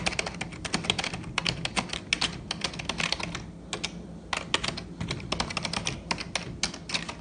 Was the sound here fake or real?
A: real